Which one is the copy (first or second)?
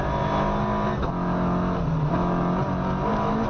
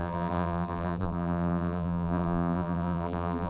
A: second